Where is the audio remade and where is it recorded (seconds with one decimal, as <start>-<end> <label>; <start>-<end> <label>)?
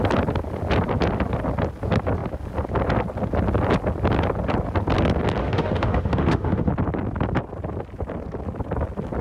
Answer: 0.0-5.4 recorded; 5.4-6.7 remade; 6.7-9.2 recorded